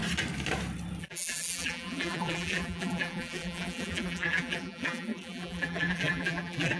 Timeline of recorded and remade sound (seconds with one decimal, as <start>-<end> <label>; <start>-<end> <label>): 0.0-1.0 recorded; 1.0-6.8 remade